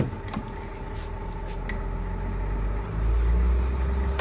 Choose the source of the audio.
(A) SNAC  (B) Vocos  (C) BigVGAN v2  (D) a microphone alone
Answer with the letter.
D